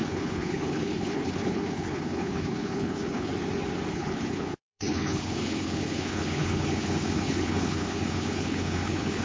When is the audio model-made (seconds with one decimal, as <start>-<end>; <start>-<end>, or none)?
0.0-3.3; 3.9-9.2